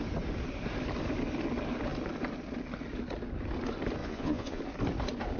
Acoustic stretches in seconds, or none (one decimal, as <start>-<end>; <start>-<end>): 0.0-4.0; 4.6-5.4